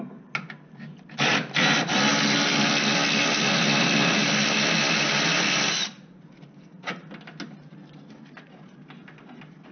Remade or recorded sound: recorded